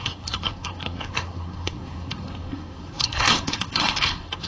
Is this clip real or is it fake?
fake